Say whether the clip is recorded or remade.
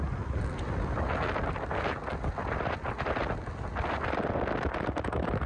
recorded